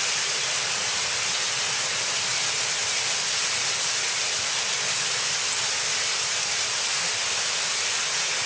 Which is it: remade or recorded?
recorded